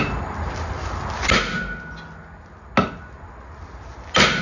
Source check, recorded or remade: recorded